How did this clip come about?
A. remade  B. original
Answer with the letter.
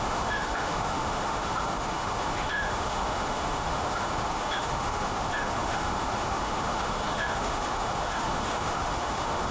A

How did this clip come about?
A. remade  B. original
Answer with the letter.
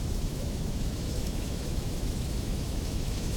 A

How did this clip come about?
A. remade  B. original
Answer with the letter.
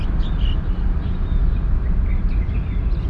B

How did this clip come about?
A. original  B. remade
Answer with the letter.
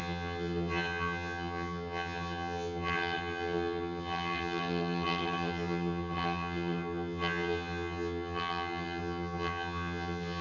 B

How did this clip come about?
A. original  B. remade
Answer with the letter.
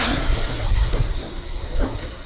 B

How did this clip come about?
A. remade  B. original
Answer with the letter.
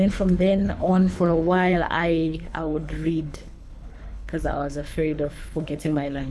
A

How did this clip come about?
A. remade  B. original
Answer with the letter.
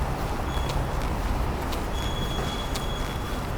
B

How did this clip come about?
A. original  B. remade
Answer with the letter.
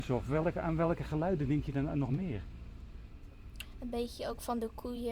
B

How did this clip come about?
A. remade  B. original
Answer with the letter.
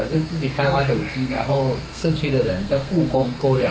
A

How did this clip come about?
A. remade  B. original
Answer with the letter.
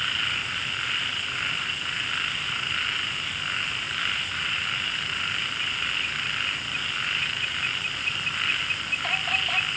B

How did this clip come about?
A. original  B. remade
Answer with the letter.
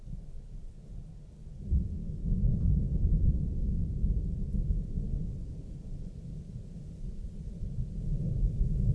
A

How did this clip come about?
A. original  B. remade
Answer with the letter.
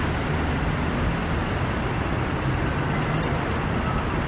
A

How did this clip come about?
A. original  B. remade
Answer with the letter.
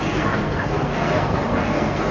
B